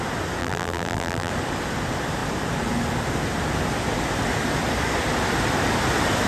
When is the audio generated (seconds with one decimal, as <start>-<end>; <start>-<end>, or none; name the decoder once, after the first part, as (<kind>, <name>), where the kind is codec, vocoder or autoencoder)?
0.4-1.3 (vocoder, BigVGAN v2)